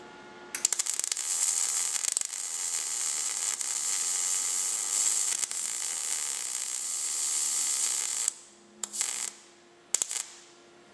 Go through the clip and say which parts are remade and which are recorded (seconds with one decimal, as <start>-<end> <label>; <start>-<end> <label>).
0.0-8.1 recorded; 8.1-9.0 remade; 9.0-10.9 recorded